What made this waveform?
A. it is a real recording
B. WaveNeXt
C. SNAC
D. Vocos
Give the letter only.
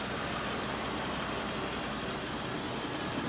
A